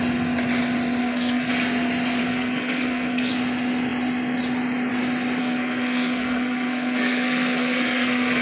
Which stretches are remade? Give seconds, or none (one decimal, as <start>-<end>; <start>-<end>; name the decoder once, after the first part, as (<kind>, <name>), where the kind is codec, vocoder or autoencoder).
1.0-1.5 (codec, SNAC); 2.2-3.3; 5.4-8.4